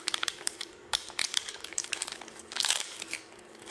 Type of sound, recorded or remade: remade